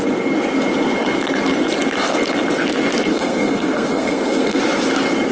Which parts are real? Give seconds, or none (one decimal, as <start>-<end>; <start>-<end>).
0.0-3.1; 4.6-5.3